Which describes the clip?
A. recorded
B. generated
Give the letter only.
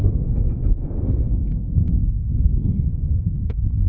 B